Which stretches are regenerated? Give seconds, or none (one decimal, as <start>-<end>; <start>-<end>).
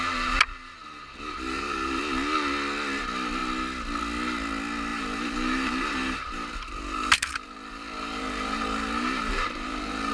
0.8-2.0; 4.9-10.1